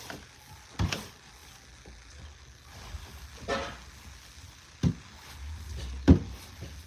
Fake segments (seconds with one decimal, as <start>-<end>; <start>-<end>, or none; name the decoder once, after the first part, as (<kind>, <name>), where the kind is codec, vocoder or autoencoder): none